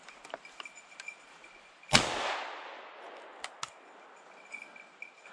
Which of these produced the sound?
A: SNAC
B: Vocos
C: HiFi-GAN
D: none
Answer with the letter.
D